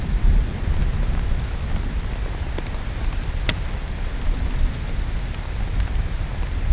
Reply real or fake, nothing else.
real